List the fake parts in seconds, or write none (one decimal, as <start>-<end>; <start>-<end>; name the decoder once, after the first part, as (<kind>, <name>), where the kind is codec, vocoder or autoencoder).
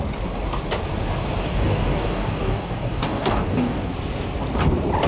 1.4-3.9 (codec, DAC)